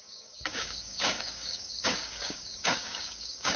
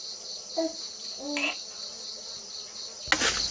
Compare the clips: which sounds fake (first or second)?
first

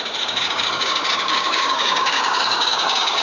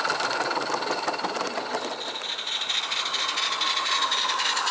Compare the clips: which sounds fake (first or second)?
first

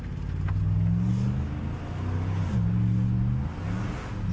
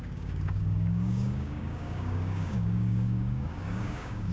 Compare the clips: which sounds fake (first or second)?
second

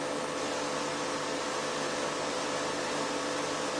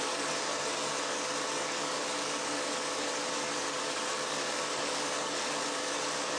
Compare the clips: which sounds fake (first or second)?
second